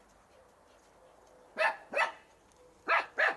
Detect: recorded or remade recorded